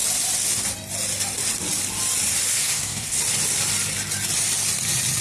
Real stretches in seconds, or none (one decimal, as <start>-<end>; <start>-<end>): 0.0-2.5; 3.2-5.2